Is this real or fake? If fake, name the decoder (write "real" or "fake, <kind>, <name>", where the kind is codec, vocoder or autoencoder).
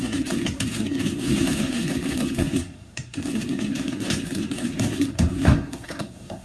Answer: fake, codec, SNAC